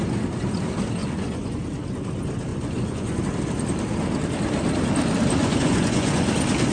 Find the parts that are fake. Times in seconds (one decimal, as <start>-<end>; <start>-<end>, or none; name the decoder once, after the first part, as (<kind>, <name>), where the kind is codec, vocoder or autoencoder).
1.0-1.6 (vocoder, Vocos); 2.5-3.2; 5.4-6.3